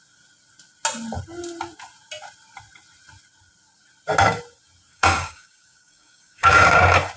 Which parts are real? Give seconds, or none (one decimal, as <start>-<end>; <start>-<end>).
0.0-4.9; 6.8-7.2